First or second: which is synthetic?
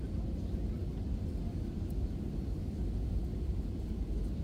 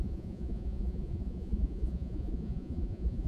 second